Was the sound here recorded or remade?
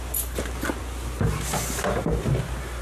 recorded